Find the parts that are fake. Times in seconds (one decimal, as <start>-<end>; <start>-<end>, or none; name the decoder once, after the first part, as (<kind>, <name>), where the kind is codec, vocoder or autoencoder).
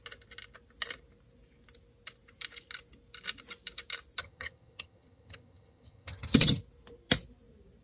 4.2-6.6 (vocoder, HiFi-GAN)